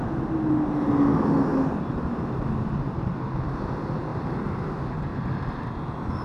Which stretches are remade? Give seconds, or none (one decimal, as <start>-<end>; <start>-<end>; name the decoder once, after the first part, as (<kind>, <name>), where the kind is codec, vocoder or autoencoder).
4.1-4.6 (vocoder, BigVGAN v2); 5.1-6.2